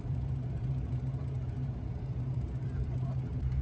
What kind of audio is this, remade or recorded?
remade